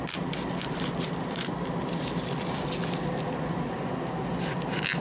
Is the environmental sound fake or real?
real